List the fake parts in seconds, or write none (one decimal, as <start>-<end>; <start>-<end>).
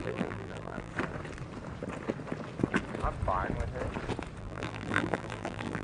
0.0-0.9; 4.4-5.8